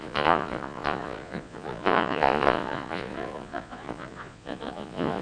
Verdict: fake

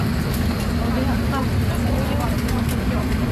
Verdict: real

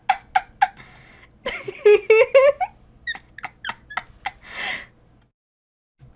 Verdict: real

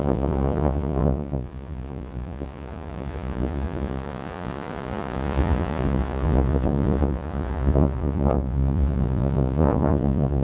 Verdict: fake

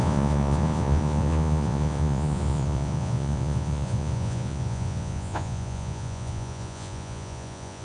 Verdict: fake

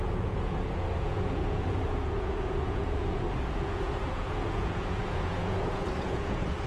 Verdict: fake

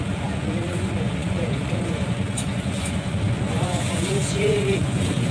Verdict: fake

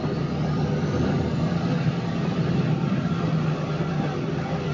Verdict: real